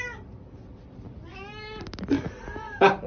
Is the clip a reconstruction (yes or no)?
no